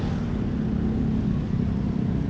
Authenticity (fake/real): real